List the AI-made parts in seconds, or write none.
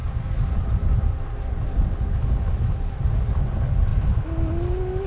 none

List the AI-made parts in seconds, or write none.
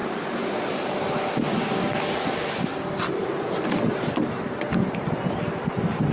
none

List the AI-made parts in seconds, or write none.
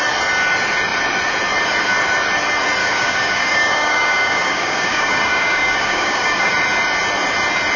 2.8-6.5 (codec, DAC)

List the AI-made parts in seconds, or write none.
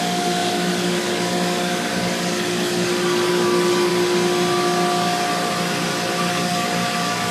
0.0-3.9 (codec, DAC); 6.3-7.3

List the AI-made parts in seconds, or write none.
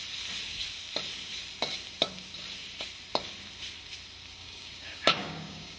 4.4-5.8 (codec, DAC)